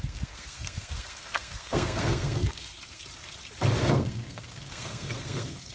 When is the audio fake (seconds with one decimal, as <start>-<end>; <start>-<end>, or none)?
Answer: 0.0-3.0; 3.8-5.7